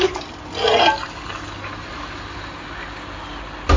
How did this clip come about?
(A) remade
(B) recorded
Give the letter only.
B